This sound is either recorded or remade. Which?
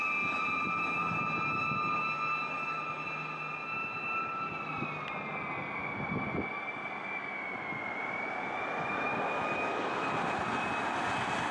recorded